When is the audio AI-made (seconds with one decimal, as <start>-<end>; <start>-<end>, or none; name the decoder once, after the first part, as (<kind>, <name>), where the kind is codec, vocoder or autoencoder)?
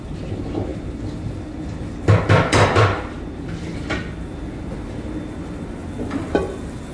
none